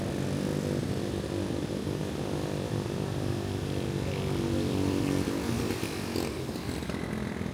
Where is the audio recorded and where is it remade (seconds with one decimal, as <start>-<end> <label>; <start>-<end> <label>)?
0.0-0.5 recorded; 0.5-1.1 remade; 1.1-7.5 recorded